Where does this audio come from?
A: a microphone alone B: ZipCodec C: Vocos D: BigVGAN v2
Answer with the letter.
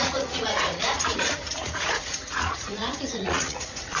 C